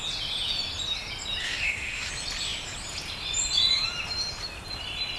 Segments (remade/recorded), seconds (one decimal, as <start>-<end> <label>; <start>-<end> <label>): 0.0-1.4 recorded; 1.4-2.1 remade; 2.1-5.2 recorded